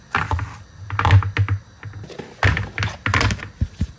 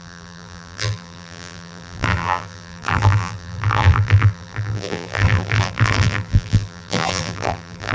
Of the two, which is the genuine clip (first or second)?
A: first